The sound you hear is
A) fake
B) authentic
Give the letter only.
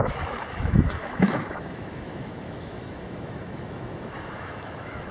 A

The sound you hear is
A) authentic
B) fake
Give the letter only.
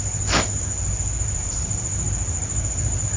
A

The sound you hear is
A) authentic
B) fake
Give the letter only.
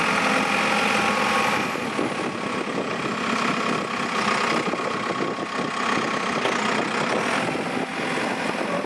A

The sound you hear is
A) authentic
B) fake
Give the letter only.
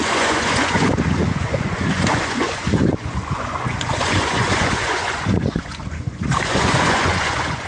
B